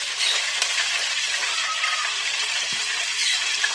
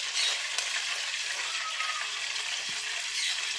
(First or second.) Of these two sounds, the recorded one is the second